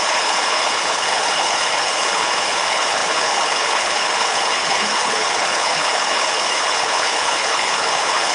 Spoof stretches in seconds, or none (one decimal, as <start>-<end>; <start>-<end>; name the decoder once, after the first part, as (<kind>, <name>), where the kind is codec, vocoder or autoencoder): 0.0-8.3 (codec, HILCodec)